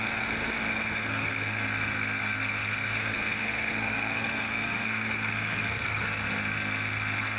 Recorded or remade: remade